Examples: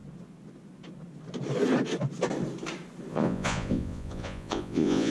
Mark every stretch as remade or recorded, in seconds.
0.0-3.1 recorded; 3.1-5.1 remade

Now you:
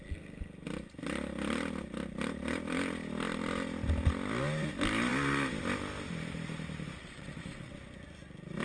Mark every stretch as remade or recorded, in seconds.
0.0-7.0 recorded; 7.0-7.7 remade; 7.7-8.6 recorded

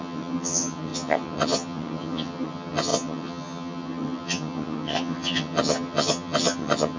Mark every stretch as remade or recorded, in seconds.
0.0-7.0 remade

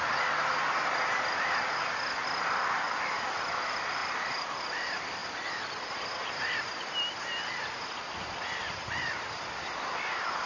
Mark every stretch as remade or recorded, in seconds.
0.0-10.5 recorded

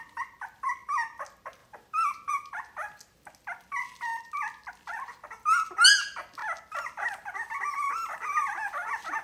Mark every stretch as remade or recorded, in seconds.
0.0-9.2 recorded

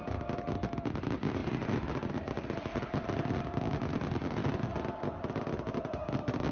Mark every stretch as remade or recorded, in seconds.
0.0-6.5 recorded

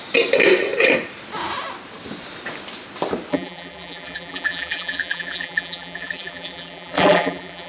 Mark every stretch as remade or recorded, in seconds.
0.0-3.3 recorded; 3.3-7.7 remade

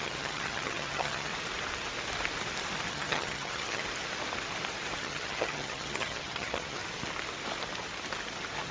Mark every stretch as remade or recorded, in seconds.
0.0-1.3 remade; 1.3-2.9 recorded; 2.9-3.8 remade; 3.8-5.0 recorded; 5.0-6.8 remade; 6.8-8.7 recorded